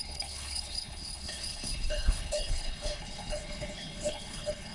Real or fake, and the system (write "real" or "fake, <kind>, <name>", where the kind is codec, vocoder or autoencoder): fake, codec, HILCodec